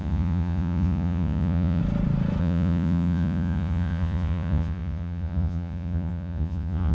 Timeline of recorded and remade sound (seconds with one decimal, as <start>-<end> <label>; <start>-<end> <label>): 0.0-1.8 remade; 1.8-2.4 recorded; 2.4-6.9 remade